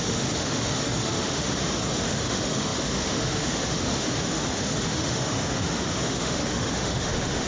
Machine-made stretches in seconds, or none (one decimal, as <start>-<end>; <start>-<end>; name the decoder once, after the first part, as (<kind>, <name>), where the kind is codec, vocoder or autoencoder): 0.0-1.5 (autoencoder, DAC-VAE); 2.0-7.5